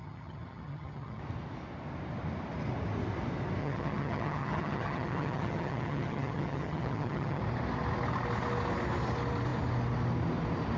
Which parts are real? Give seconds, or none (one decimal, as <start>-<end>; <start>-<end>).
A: 1.2-3.6; 7.4-10.8